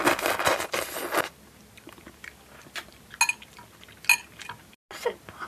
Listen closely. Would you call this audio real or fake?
real